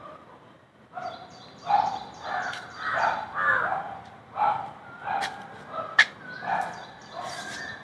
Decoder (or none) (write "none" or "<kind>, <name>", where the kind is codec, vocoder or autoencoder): vocoder, BigVGAN v2